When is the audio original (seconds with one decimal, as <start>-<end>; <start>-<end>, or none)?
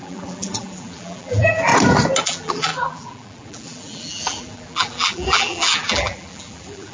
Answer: 1.7-2.2